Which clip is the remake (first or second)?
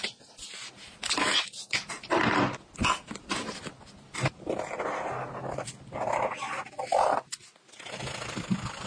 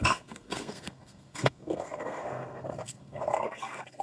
second